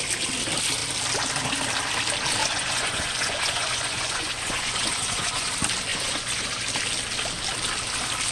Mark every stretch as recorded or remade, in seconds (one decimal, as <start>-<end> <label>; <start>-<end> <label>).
0.0-2.4 recorded; 2.4-5.5 remade; 5.5-5.9 recorded; 5.9-6.5 remade; 6.5-8.3 recorded